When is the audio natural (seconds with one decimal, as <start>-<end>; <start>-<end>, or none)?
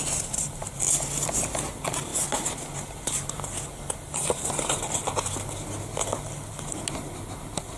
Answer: 0.0-7.8